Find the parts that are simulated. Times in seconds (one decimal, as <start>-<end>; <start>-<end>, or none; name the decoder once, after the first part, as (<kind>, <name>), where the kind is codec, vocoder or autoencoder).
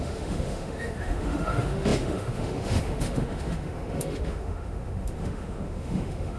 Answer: 0.0-6.4 (autoencoder, DAC-VAE)